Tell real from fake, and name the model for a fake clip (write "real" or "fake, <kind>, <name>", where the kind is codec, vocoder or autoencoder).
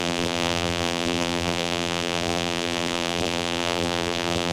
fake, vocoder, BigVGAN v2